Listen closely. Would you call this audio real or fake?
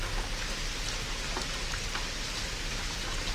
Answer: real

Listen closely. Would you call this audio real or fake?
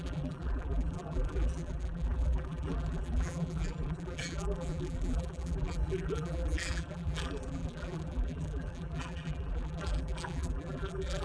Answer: fake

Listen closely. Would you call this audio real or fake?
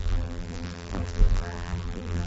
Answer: fake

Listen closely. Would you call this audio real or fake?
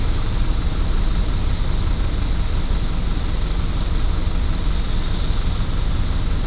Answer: real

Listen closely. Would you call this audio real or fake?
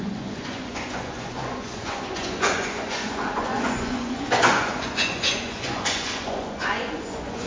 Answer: fake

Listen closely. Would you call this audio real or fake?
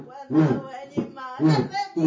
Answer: real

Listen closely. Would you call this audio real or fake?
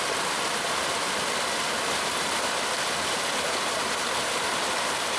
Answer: real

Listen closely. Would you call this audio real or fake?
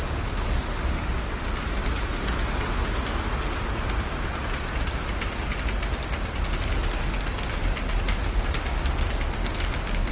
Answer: real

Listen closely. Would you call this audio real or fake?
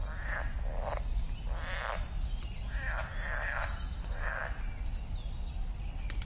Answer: real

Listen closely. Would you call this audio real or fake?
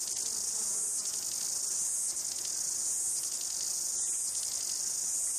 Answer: real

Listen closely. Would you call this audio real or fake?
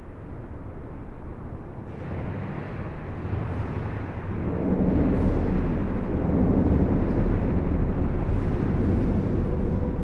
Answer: real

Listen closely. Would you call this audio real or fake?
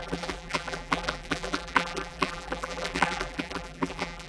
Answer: fake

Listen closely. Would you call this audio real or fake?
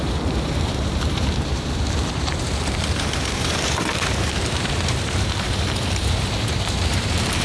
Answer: fake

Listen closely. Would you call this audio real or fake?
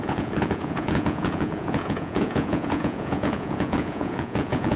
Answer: fake